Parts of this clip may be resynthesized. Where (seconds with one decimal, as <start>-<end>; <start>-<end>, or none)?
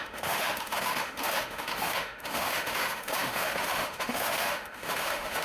0.0-5.4